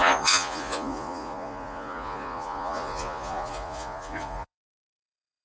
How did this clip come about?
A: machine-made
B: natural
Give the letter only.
A